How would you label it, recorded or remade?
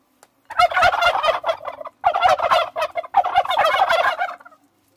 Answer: recorded